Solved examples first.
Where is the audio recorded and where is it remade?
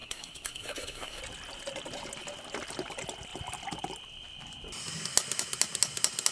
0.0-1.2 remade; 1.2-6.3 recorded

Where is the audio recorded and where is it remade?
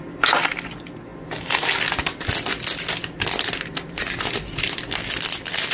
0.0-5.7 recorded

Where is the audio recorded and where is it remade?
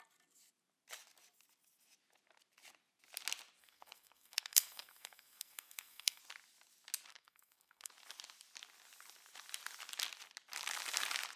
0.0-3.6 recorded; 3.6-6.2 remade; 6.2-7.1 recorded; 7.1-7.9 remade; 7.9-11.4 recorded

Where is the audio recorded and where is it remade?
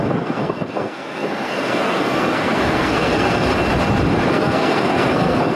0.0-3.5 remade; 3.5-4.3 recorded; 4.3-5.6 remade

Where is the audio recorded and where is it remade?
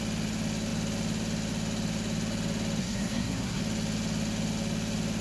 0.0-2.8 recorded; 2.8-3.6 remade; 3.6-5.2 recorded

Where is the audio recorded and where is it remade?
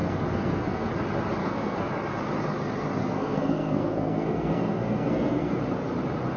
0.0-0.9 remade; 0.9-1.4 recorded; 1.4-1.9 remade; 1.9-3.0 recorded; 3.0-5.6 remade; 5.6-6.4 recorded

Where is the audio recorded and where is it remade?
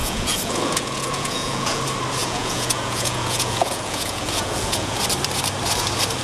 0.0-1.8 remade; 1.8-2.2 recorded; 2.2-5.0 remade; 5.0-6.2 recorded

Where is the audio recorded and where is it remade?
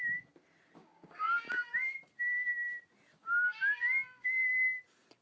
0.0-0.8 recorded; 0.8-1.7 remade; 1.7-3.2 recorded; 3.2-4.5 remade; 4.5-5.2 recorded